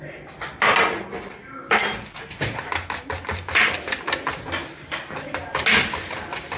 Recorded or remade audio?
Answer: recorded